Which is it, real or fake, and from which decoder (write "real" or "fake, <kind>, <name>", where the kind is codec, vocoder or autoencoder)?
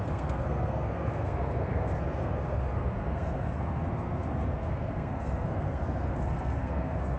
fake, codec, SNAC